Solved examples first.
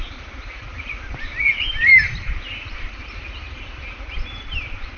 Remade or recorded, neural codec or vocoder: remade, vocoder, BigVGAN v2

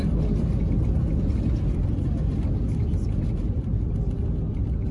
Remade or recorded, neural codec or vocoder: recorded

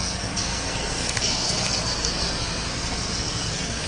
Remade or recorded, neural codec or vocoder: remade, codec, SNAC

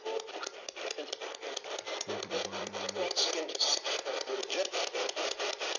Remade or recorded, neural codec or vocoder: remade, vocoder, BigVGAN v2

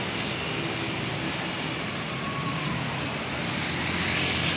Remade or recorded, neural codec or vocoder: recorded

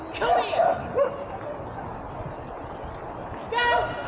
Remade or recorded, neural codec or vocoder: recorded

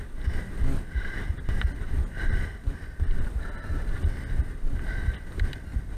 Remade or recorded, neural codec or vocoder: recorded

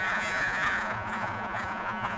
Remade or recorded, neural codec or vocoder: remade, vocoder, Vocos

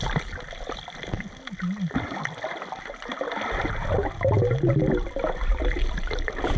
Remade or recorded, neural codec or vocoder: recorded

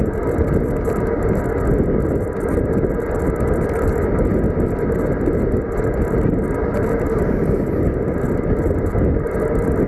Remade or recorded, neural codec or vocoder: recorded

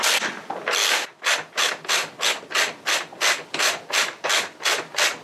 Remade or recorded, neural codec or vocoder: recorded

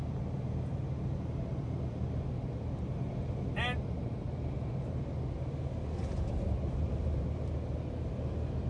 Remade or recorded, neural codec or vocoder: recorded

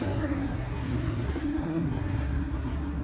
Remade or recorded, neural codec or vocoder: remade, codec, SNAC